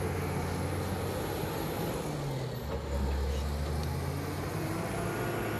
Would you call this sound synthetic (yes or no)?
no